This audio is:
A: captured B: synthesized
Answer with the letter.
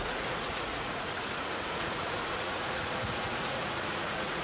B